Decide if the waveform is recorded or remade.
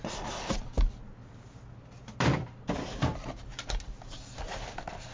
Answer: recorded